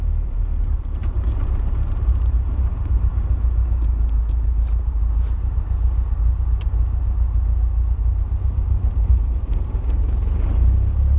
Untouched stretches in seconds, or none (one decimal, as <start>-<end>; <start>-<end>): 3.1-8.2